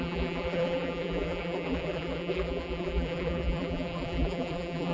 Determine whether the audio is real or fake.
fake